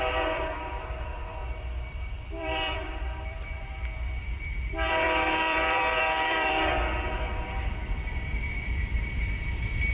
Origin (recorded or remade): remade